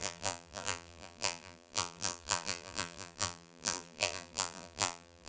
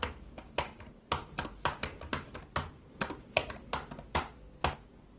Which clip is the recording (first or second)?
second